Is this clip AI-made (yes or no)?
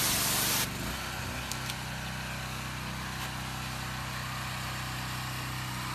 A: no